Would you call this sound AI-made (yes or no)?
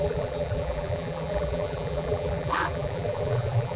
yes